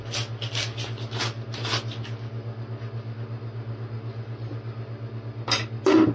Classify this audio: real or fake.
real